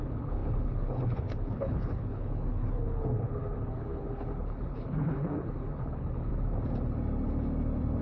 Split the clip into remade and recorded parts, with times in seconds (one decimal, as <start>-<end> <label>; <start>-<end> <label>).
0.0-6.3 remade; 6.3-8.0 recorded